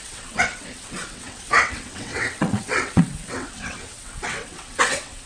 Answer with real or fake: fake